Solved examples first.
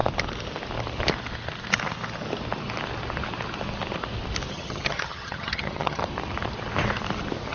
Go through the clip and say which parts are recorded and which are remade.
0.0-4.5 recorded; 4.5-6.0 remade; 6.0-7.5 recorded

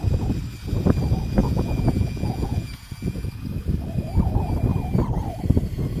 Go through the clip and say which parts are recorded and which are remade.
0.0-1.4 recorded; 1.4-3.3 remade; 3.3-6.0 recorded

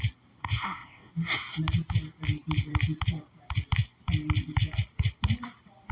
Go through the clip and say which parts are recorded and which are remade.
0.0-0.4 recorded; 0.4-1.1 remade; 1.1-5.9 recorded

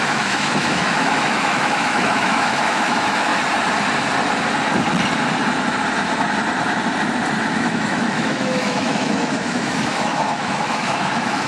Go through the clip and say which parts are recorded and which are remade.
0.0-3.3 remade; 3.3-7.5 recorded; 7.5-11.5 remade

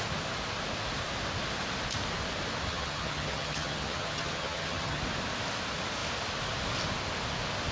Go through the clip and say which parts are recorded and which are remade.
0.0-2.7 recorded; 2.7-5.0 remade; 5.0-7.7 recorded